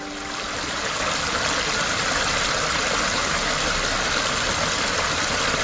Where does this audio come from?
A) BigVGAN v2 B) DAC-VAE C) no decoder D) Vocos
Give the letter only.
C